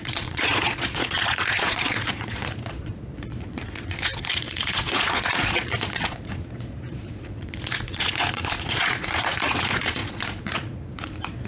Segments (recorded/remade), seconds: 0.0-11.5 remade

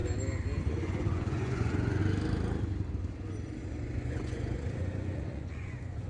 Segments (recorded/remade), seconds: 0.0-0.6 recorded; 0.6-2.0 remade; 2.0-3.6 recorded; 3.6-6.1 remade

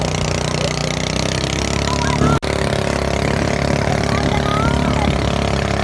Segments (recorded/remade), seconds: 0.0-5.8 recorded

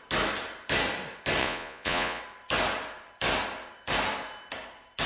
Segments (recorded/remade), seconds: 0.0-1.4 recorded; 1.4-2.2 remade; 2.2-5.1 recorded